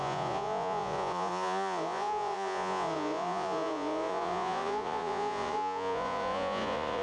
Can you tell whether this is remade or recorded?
remade